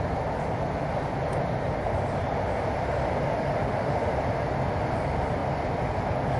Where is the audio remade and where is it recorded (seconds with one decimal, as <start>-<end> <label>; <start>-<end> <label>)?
0.0-3.6 recorded; 3.6-4.1 remade; 4.1-6.4 recorded